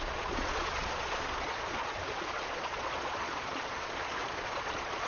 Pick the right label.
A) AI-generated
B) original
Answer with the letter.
A